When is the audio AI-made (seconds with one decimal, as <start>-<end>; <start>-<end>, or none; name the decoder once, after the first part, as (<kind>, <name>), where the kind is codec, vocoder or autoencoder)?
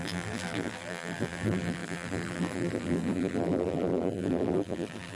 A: 0.0-5.1 (vocoder, BigVGAN v2)